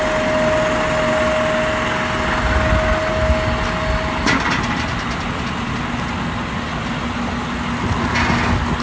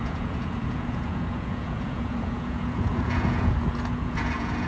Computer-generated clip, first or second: second